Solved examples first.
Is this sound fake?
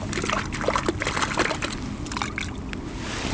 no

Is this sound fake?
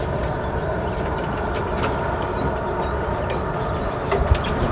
no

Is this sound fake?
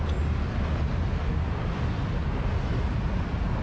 no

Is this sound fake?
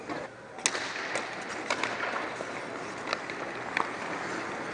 no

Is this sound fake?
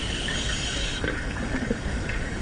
yes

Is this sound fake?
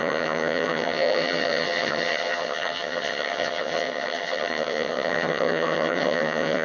yes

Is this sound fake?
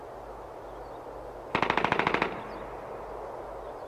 no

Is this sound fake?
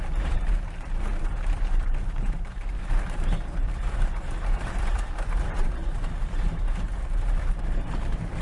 yes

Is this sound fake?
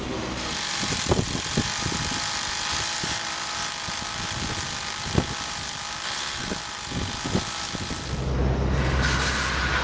no